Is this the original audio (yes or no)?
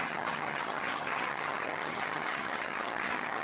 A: no